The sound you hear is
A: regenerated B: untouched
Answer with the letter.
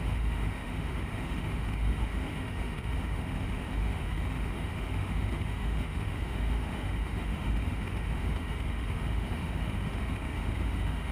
A